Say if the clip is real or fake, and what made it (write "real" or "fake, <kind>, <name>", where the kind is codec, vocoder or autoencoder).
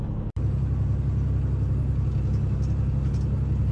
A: real